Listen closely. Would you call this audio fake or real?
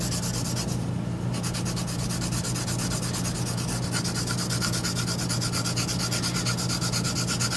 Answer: real